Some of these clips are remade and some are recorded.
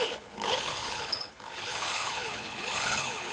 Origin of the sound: remade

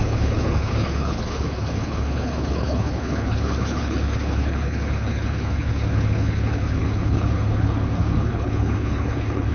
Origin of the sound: remade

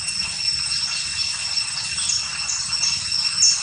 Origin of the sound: recorded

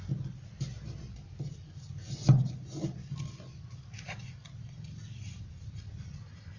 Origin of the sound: recorded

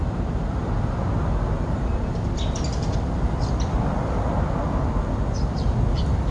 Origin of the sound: recorded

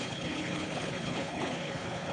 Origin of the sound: remade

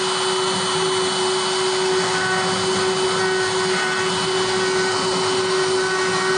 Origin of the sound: recorded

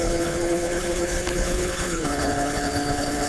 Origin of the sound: remade